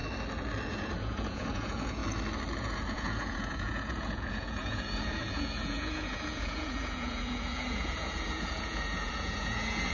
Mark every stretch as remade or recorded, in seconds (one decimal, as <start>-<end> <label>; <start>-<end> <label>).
0.0-0.7 recorded; 0.7-2.0 remade; 2.0-2.6 recorded; 2.6-9.9 remade